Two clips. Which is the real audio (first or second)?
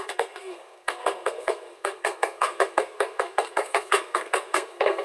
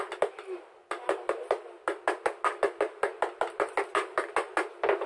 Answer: second